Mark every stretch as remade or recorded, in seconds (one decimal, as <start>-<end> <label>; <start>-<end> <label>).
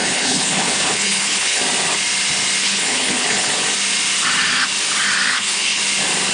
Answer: 0.0-1.6 remade; 1.6-2.6 recorded; 2.6-3.5 remade; 3.5-5.3 recorded; 5.3-5.8 remade; 5.8-6.3 recorded